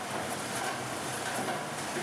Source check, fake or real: real